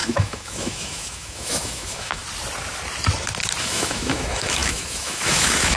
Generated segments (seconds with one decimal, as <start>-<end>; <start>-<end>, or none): 0.0-2.2; 3.6-5.8